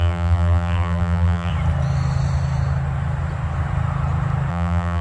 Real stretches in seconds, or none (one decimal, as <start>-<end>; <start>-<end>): 1.5-4.5